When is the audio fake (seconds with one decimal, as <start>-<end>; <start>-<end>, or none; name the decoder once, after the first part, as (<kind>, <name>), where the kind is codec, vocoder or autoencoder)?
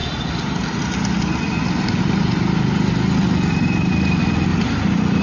3.2-3.9 (vocoder, BigVGAN v2)